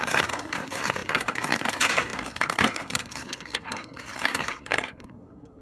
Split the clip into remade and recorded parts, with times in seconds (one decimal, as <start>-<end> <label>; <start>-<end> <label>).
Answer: 0.0-5.6 remade